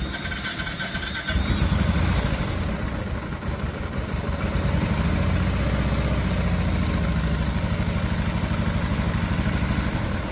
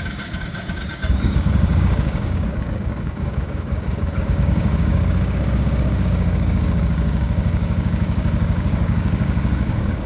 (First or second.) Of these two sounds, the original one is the first